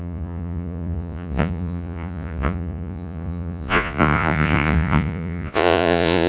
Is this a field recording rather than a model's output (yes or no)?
no